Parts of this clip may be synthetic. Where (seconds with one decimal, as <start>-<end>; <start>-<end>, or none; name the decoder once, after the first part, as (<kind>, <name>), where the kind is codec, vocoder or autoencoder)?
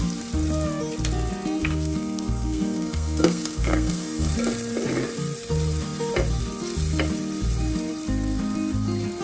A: 1.6-4.3 (codec, SNAC)